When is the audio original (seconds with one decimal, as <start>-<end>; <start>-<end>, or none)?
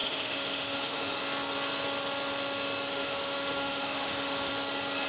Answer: 1.2-2.9; 4.5-5.1